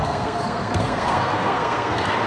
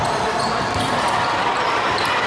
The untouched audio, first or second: second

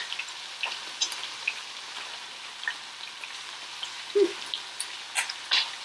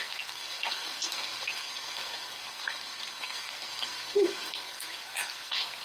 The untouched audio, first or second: first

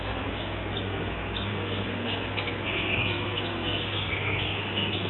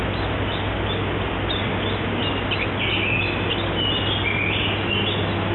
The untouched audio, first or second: second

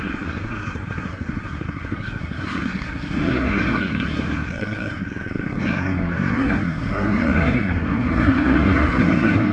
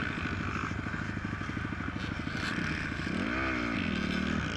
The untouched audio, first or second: second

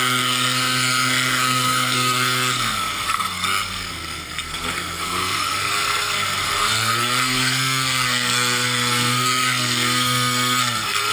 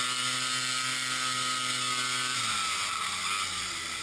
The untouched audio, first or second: second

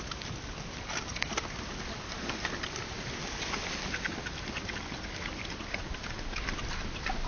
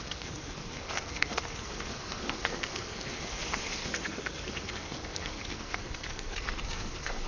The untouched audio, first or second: first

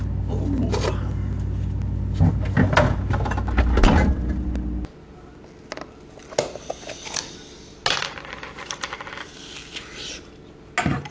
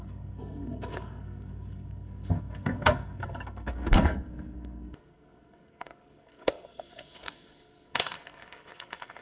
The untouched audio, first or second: first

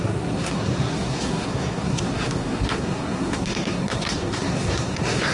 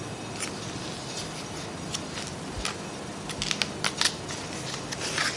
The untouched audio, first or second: second